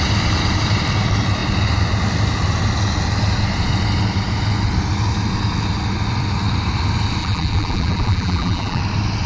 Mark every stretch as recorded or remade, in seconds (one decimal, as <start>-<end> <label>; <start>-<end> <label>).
0.0-7.2 recorded; 7.2-8.8 remade; 8.8-9.3 recorded